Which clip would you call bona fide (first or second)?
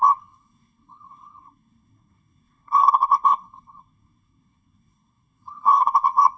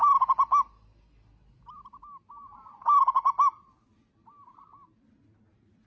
second